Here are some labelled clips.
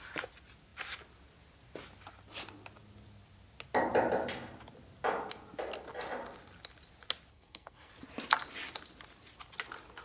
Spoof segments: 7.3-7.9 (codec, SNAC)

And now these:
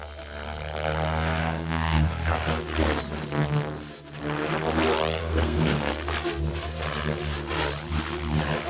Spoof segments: 1.4-2.6 (codec, SNAC); 5.2-5.9

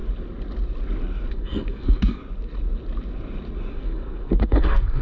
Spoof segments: 1.3-2.2 (codec, SNAC); 3.7-5.0

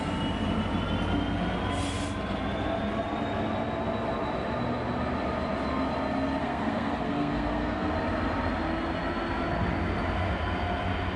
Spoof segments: 6.4-7.9 (codec, SNAC)